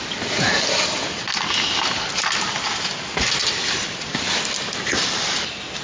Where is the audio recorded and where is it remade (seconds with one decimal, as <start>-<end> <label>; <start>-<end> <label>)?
0.0-5.8 recorded